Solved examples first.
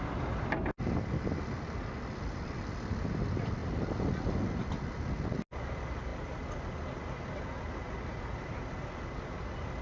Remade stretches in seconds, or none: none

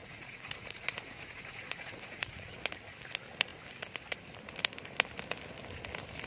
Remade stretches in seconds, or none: 0.0-2.6 (vocoder, Vocos)